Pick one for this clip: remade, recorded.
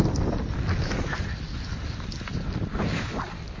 recorded